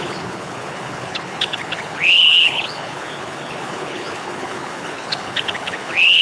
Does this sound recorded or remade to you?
remade